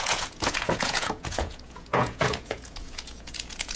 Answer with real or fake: fake